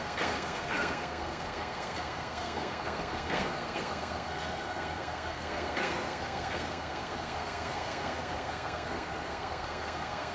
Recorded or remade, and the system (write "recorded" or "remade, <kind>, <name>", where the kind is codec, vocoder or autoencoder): remade, codec, SNAC